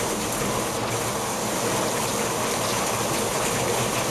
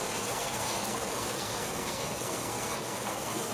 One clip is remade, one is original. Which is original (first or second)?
first